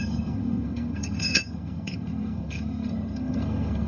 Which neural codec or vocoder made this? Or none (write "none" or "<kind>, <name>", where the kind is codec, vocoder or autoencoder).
codec, SNAC